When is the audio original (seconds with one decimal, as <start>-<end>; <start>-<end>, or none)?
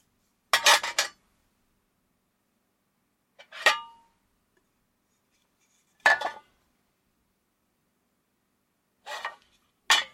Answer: 0.0-5.8; 7.9-10.1